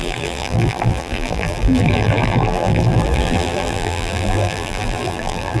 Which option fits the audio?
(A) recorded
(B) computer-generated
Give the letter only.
B